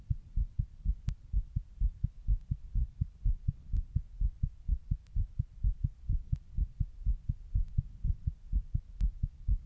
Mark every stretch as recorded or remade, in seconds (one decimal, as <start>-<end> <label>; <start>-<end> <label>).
0.0-2.8 recorded; 2.8-5.8 remade; 5.8-9.7 recorded